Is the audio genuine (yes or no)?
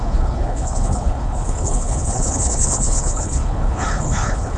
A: no